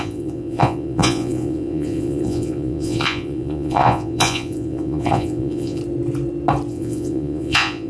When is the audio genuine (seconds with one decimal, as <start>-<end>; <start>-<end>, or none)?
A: 5.8-6.7